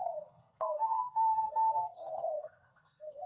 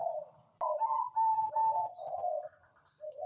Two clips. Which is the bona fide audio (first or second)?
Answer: second